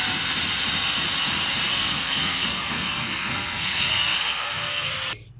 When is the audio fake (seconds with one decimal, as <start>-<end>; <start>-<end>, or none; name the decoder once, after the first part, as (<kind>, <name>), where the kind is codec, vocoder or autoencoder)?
1.7-4.9 (codec, SNAC)